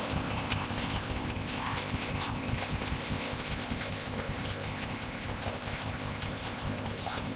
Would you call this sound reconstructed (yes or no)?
yes